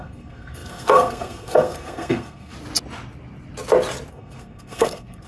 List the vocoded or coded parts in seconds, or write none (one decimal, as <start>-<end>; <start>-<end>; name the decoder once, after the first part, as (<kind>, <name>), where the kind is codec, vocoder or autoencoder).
0.0-2.5 (codec, SNAC); 4.1-5.3